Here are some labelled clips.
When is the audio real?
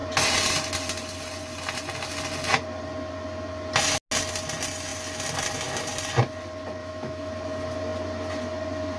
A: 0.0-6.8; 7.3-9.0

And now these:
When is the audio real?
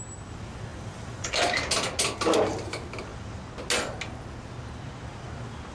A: 0.0-0.7; 1.3-5.7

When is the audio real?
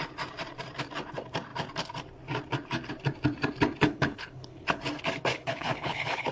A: 0.0-3.8; 4.8-5.3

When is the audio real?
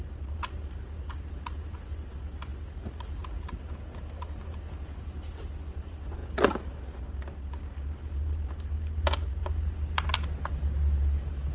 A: 0.0-11.5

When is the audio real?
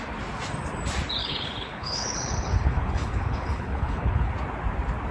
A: 0.0-1.2; 4.3-5.1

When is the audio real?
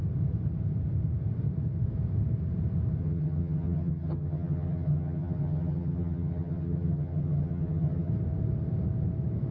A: 0.0-3.0; 8.1-9.5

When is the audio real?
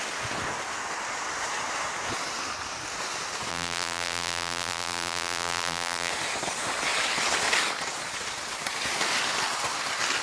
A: 0.0-3.5; 6.1-10.2